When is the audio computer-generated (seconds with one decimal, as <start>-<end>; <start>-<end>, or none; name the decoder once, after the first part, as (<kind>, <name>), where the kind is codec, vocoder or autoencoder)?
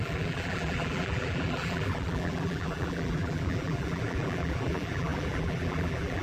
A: 0.0-6.2 (vocoder, BigVGAN v2)